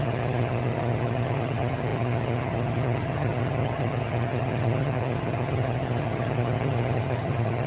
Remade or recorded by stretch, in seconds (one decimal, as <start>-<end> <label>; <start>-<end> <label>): 0.0-7.7 remade